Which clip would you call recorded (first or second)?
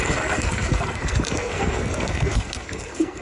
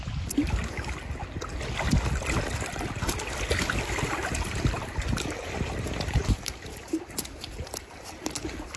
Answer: second